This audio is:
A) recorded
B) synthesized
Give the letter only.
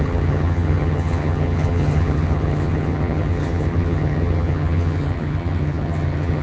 B